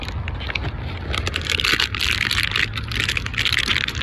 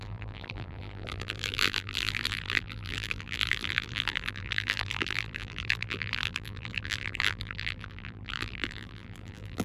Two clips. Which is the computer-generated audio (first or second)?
second